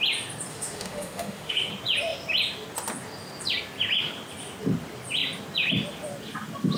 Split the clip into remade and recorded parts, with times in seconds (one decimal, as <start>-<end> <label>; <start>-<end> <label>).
0.0-0.5 recorded; 0.5-1.7 remade; 1.7-6.8 recorded